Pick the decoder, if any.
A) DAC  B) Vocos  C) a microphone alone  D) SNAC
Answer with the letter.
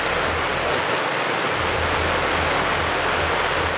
C